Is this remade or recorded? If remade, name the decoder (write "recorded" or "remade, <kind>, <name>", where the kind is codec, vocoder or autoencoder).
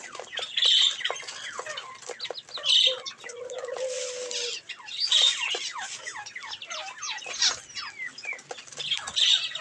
recorded